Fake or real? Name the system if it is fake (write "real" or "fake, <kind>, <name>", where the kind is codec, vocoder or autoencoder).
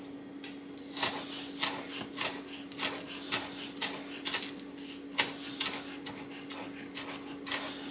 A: real